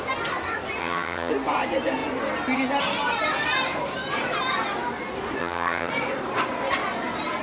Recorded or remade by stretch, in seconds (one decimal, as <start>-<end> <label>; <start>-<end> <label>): 0.0-0.8 recorded; 0.8-1.3 remade; 1.3-5.4 recorded; 5.4-5.9 remade; 5.9-7.4 recorded